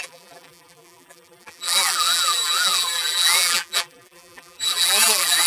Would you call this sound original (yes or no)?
no